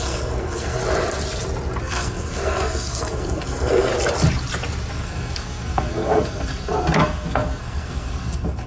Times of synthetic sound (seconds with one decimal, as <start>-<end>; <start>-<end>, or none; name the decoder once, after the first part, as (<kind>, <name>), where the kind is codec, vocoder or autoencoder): 0.0-0.8 (codec, SNAC); 1.8-3.9; 4.9-8.7